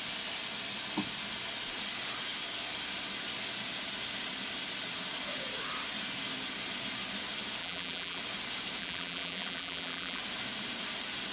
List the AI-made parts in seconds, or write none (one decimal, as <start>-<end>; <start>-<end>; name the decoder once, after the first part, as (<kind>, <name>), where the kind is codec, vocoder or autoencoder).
7.6-8.2 (vocoder, BigVGAN v2); 8.8-10.2